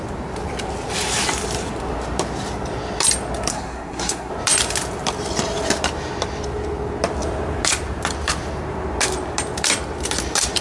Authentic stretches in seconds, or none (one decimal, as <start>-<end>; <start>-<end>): 0.0-3.5; 4.3-10.6